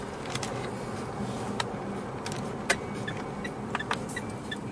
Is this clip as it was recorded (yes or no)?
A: yes